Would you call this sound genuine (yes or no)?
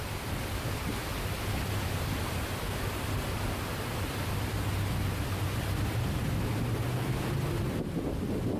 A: yes